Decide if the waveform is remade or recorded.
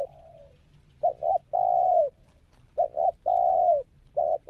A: recorded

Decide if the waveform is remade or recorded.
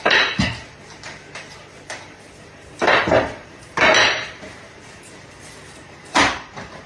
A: remade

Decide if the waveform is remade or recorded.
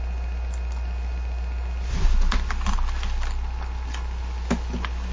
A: recorded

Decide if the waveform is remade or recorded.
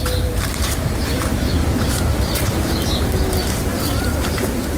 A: remade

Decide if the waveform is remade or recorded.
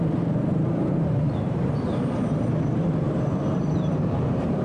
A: remade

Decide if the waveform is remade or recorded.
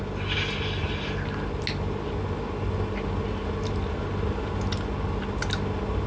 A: recorded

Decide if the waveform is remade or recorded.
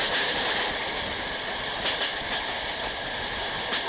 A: recorded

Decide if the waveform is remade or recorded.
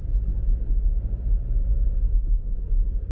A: recorded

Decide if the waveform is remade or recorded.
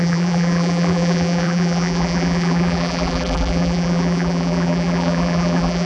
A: remade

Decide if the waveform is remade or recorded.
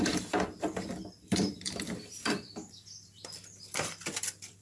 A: remade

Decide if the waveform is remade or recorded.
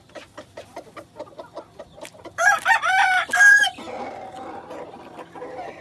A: remade